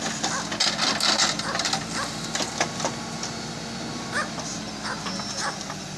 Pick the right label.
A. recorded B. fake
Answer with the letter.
A